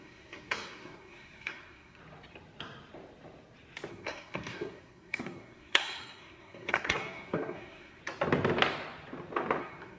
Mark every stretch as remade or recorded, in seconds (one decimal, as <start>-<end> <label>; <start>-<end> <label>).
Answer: 0.0-2.0 remade; 2.0-3.9 recorded; 3.9-8.0 remade; 8.0-9.6 recorded; 9.6-10.0 remade